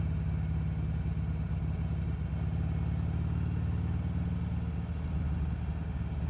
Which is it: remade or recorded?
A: recorded